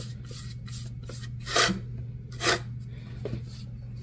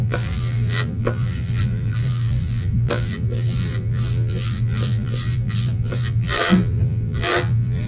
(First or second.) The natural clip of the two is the first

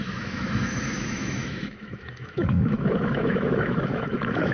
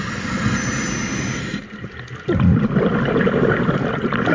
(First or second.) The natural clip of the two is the second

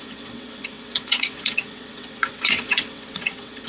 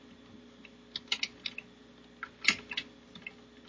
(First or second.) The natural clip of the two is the second